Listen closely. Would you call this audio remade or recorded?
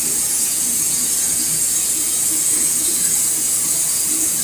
remade